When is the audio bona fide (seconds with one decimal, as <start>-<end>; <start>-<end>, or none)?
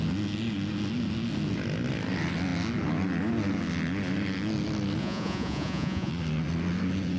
0.0-5.0; 6.1-7.2